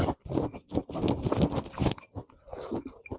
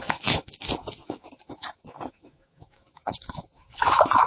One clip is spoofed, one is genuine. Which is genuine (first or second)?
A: first